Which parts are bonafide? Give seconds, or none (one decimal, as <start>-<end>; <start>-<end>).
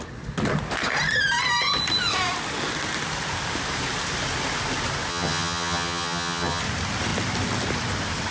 0.0-5.1; 6.6-8.3